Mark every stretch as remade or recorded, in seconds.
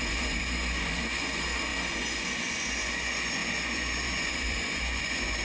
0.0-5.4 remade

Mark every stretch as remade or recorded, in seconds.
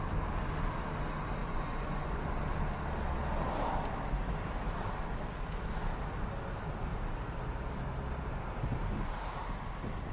0.0-1.4 recorded; 1.4-2.2 remade; 2.2-10.1 recorded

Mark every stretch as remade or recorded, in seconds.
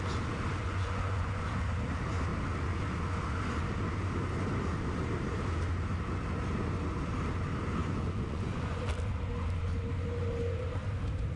0.0-0.6 recorded; 0.6-1.5 remade; 1.5-7.8 recorded; 7.8-8.8 remade; 8.8-11.4 recorded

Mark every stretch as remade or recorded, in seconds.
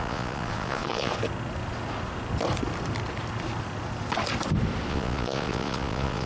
0.0-1.1 remade; 1.1-4.9 recorded; 4.9-6.3 remade